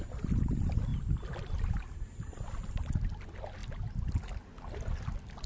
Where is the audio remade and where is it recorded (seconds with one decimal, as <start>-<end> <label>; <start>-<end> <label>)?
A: 0.0-5.5 recorded